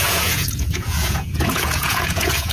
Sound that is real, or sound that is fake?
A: fake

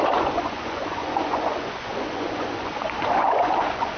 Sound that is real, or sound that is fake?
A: fake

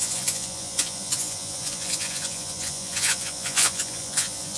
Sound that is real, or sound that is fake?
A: fake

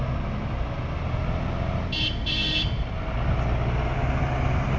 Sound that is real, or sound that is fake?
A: real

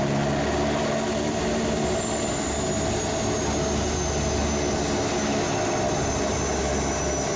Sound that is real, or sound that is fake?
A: real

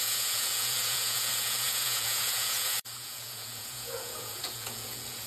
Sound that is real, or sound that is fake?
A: fake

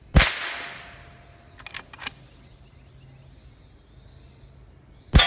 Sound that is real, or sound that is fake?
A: real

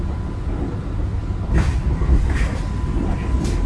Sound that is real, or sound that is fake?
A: real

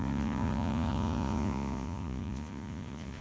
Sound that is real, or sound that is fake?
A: fake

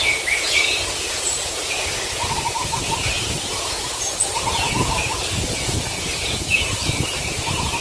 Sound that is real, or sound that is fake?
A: fake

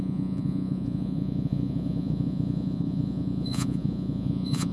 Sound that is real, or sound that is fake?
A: fake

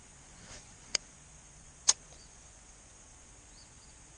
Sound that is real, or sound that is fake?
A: fake